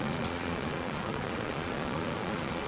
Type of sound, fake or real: fake